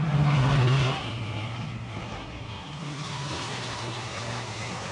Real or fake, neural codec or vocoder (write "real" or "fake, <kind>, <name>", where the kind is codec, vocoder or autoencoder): fake, codec, SNAC